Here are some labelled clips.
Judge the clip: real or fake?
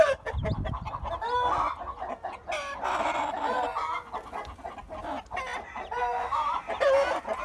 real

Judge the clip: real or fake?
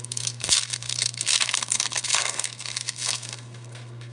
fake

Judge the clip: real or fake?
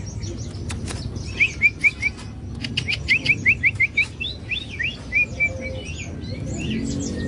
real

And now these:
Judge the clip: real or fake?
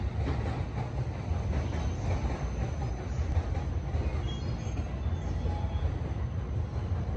real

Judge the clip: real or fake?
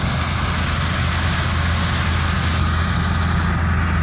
real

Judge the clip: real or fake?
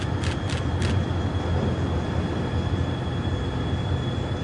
real